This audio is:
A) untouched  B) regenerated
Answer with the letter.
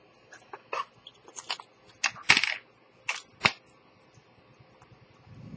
A